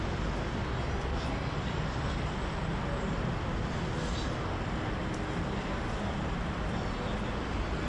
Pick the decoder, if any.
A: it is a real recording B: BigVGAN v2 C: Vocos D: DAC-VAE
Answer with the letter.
A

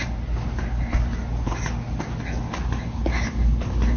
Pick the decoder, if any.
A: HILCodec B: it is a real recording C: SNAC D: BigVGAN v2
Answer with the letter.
B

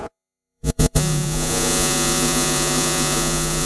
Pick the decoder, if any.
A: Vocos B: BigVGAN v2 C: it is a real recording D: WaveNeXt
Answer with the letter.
A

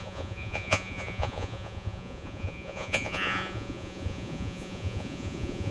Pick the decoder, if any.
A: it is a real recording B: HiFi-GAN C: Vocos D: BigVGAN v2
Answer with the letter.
C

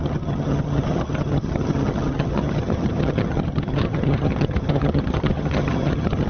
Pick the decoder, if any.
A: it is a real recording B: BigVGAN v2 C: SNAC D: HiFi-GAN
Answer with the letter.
D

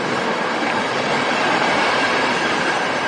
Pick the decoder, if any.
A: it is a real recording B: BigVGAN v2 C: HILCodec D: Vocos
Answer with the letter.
B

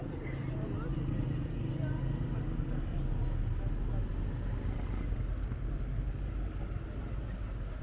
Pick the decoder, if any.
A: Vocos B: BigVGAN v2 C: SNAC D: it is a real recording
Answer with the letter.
D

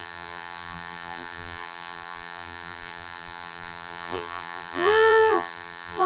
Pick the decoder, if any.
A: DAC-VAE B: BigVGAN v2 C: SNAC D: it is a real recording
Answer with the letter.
B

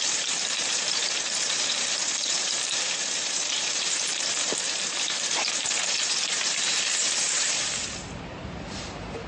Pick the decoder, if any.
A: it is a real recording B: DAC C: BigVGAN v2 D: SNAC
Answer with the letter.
C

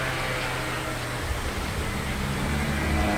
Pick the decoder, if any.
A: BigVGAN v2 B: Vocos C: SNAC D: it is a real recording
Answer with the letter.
D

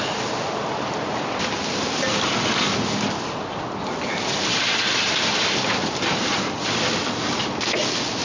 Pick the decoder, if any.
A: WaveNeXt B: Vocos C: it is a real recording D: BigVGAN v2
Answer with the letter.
C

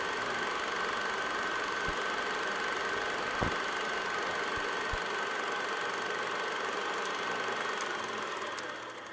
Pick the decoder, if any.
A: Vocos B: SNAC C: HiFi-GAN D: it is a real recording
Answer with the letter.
D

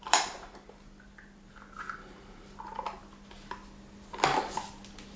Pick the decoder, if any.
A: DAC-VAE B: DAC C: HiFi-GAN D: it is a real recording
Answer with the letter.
D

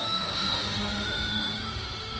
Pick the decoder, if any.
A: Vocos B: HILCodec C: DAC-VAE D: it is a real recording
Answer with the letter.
C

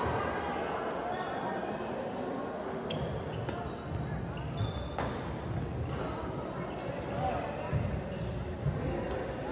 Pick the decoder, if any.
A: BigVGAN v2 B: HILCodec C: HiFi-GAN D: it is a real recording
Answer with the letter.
D